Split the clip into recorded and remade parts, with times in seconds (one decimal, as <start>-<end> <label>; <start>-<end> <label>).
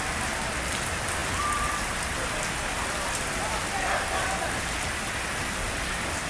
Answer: 0.0-6.3 recorded